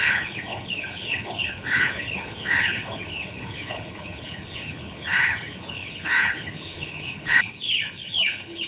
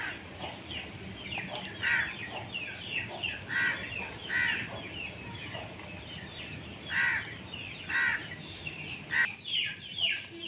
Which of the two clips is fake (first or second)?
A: first